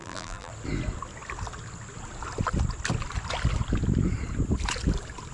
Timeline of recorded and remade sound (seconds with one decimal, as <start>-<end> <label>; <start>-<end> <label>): 0.0-0.5 remade; 0.5-5.3 recorded

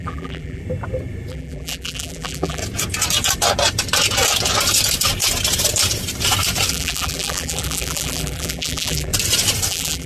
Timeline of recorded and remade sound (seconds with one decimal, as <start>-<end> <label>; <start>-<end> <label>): 0.0-0.6 remade; 0.6-1.3 recorded; 1.3-2.6 remade; 2.6-6.7 recorded; 6.7-9.1 remade; 9.1-9.7 recorded; 9.7-10.1 remade

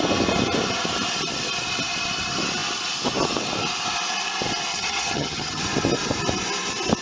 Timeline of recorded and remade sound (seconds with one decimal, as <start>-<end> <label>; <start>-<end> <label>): 0.0-4.7 recorded; 4.7-5.6 remade; 5.6-7.0 recorded

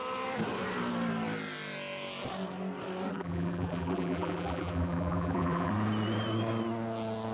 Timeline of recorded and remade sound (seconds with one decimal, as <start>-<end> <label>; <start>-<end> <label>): 0.0-3.1 recorded; 3.1-5.7 remade; 5.7-7.3 recorded

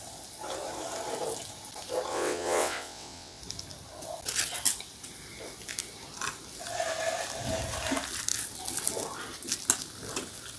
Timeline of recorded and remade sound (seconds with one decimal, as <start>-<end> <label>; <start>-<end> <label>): 0.0-2.1 recorded; 2.1-3.4 remade; 3.4-10.6 recorded

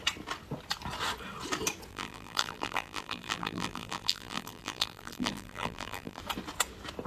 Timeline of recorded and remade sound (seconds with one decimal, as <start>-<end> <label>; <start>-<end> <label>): 0.0-1.9 recorded; 1.9-6.2 remade; 6.2-7.1 recorded